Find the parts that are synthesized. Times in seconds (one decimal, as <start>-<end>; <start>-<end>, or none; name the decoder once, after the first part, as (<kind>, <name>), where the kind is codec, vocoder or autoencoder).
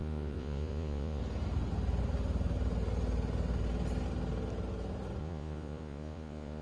0.0-1.2 (vocoder, Vocos); 5.2-6.6